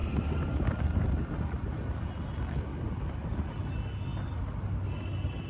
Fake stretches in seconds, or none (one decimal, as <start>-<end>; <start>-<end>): none